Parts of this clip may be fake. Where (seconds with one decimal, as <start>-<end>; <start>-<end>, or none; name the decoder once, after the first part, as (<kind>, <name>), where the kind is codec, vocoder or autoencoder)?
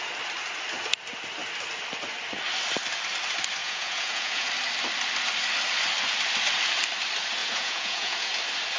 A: 3.6-4.5 (vocoder, Vocos); 7.4-8.3